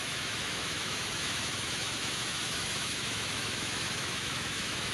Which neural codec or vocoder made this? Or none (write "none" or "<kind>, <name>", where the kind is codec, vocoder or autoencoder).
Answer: autoencoder, DAC-VAE